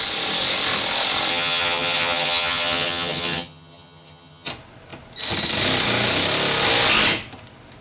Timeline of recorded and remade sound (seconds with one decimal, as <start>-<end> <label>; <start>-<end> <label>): 0.0-1.3 recorded; 1.3-4.5 remade; 4.5-7.8 recorded